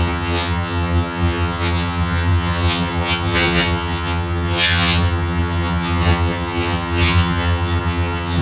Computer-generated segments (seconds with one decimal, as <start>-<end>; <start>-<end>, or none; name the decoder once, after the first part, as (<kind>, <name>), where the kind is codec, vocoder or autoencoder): 0.0-8.4 (vocoder, HiFi-GAN)